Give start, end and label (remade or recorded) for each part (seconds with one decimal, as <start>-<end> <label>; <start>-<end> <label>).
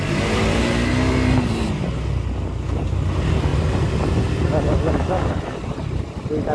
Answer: 0.0-3.5 recorded; 3.5-4.9 remade; 4.9-6.5 recorded